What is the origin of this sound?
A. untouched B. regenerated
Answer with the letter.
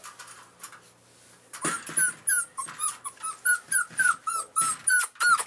A